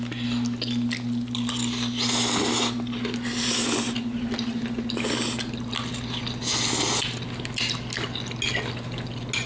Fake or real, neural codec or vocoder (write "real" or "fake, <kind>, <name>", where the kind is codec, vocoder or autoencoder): real